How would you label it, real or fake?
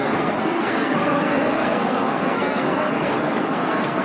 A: fake